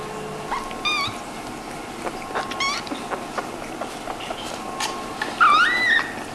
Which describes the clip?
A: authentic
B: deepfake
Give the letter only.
A